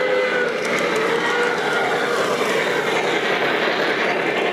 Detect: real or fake real